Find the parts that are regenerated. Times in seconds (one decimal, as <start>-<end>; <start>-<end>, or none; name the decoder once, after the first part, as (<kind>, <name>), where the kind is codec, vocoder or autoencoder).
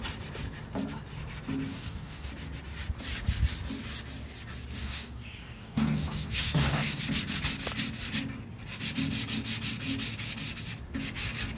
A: 1.7-2.3 (codec, DAC); 4.8-7.0